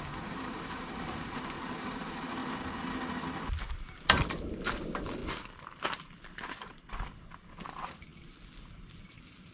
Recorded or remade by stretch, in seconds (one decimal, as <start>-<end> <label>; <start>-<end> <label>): 0.0-2.4 remade; 2.4-3.7 recorded; 3.7-5.2 remade; 5.2-7.5 recorded; 7.5-8.1 remade; 8.1-9.1 recorded; 9.1-9.5 remade